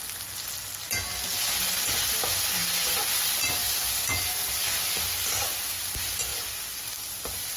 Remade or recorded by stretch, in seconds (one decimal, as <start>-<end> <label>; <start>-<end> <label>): 0.0-7.6 recorded